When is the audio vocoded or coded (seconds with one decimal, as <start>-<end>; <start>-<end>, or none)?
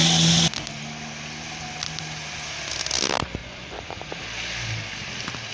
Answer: 3.4-4.1